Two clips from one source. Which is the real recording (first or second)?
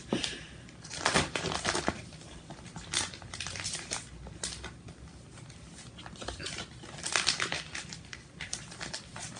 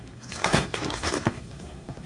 first